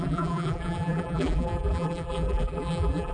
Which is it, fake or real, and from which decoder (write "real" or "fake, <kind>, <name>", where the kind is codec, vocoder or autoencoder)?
fake, vocoder, BigVGAN v2